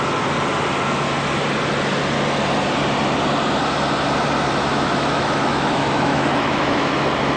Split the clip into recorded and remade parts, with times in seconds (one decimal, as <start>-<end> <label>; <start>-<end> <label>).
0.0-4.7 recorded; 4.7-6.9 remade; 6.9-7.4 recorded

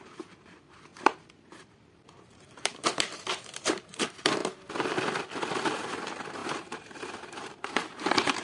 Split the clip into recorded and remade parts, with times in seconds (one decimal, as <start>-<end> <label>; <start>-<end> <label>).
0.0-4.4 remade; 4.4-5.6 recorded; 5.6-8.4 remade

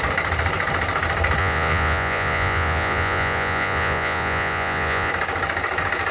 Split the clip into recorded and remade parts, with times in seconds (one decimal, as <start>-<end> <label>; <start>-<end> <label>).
0.0-1.4 recorded; 1.4-5.1 remade; 5.1-6.1 recorded